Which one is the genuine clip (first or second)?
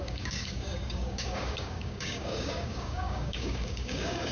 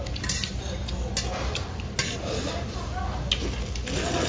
second